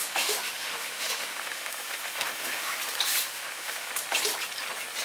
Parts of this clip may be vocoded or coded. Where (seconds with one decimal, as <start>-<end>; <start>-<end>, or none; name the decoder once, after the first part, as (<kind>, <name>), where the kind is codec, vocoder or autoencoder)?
0.0-2.8 (autoencoder, DAC-VAE); 3.2-3.9